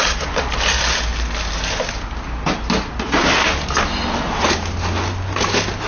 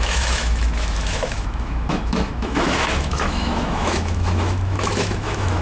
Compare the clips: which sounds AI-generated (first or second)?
second